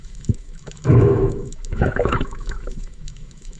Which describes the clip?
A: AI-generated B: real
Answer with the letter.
A